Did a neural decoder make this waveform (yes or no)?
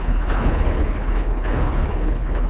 yes